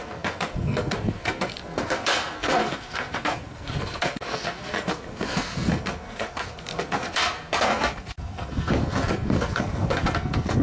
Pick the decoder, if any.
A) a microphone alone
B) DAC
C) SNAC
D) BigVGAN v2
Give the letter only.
C